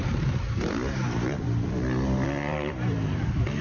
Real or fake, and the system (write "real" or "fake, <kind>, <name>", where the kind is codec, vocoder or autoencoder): fake, vocoder, BigVGAN v2